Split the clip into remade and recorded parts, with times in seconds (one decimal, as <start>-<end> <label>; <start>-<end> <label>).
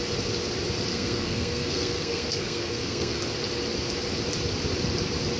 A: 0.0-0.9 recorded; 0.9-3.2 remade; 3.2-5.4 recorded